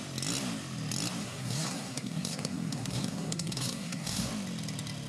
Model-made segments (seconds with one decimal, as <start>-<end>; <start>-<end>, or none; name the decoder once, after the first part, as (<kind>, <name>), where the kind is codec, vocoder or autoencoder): 1.2-4.3 (codec, SNAC)